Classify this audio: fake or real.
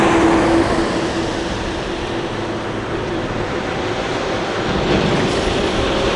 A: fake